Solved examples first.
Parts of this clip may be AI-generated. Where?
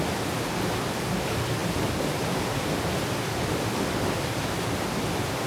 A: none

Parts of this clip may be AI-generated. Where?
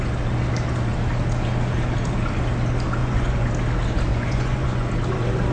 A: 3.0-3.5; 4.1-4.9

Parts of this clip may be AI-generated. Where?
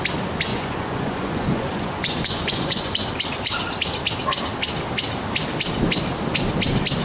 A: 0.5-3.1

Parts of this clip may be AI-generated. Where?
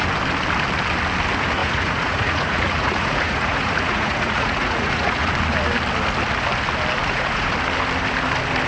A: 1.6-5.3; 7.0-7.5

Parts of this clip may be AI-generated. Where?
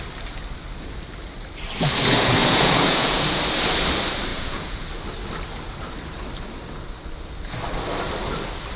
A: 2.4-3.4; 4.3-4.9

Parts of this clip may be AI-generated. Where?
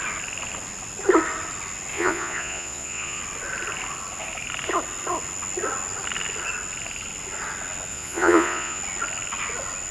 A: 1.9-3.2; 7.9-8.8